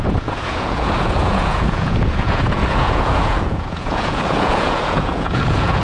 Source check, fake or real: fake